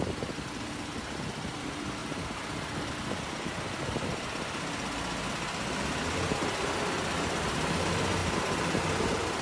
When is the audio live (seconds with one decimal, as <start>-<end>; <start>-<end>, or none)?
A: 0.0-9.4